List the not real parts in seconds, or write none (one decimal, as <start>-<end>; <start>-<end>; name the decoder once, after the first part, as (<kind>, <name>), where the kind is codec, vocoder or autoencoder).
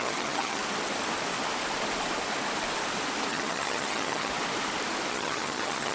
0.0-0.6 (vocoder, HiFi-GAN); 3.3-4.3; 5.1-5.9